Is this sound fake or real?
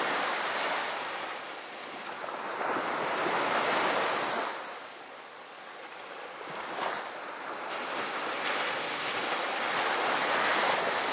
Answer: real